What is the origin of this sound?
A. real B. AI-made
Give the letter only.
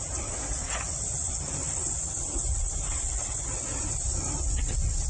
A